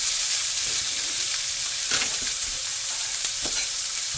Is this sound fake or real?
fake